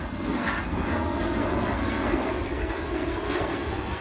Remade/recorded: remade